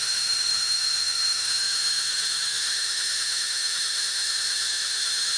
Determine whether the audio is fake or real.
fake